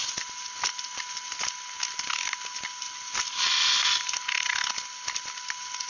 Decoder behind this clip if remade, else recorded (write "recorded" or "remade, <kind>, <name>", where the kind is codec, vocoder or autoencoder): recorded